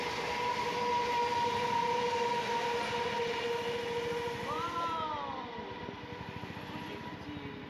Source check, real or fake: real